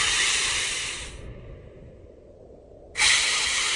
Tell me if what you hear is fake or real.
fake